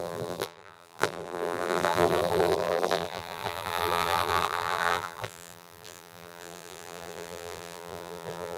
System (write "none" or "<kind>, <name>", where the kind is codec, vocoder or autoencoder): vocoder, BigVGAN v2